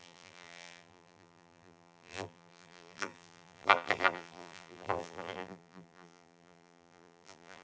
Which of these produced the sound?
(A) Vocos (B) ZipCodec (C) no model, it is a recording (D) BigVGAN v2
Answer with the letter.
D